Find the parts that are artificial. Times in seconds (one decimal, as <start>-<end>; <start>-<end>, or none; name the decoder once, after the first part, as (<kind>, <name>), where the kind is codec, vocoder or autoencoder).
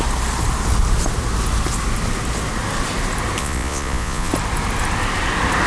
3.4-4.3 (vocoder, Vocos)